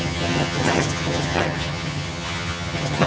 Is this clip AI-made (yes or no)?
yes